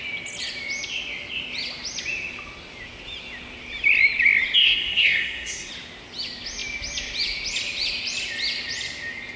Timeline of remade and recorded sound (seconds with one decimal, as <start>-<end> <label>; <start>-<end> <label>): 0.0-4.6 recorded; 4.6-5.7 remade; 5.7-9.4 recorded

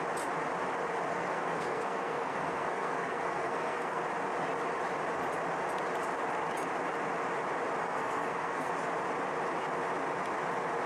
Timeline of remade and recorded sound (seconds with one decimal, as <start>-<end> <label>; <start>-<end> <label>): 0.0-1.1 recorded; 1.1-4.0 remade; 4.0-7.8 recorded; 7.8-8.7 remade; 8.7-10.9 recorded

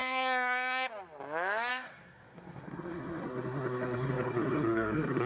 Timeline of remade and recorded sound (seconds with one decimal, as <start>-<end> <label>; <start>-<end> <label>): 0.0-0.9 remade; 0.9-1.7 recorded; 1.7-5.3 remade

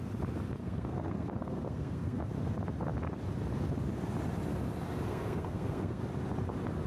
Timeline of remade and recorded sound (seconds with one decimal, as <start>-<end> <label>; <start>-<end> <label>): 0.0-0.6 recorded; 0.6-2.3 remade; 2.3-5.1 recorded; 5.1-6.0 remade; 6.0-6.9 recorded

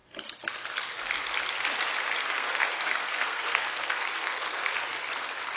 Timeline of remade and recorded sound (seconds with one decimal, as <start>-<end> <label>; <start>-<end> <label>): 0.0-2.2 recorded; 2.2-4.7 remade; 4.7-5.6 recorded

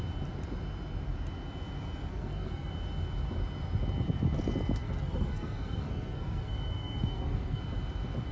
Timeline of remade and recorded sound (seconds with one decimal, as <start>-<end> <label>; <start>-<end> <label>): 0.0-2.1 recorded; 2.1-2.7 remade; 2.7-4.8 recorded; 4.8-7.6 remade; 7.6-8.3 recorded

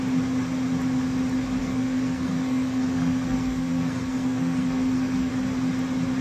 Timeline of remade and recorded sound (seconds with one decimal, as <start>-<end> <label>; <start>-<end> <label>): 0.0-1.6 recorded; 1.6-5.3 remade; 5.3-6.2 recorded

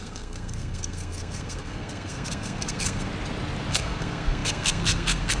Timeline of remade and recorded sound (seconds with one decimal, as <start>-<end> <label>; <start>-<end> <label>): 0.0-3.1 remade; 3.1-3.7 recorded; 3.7-5.4 remade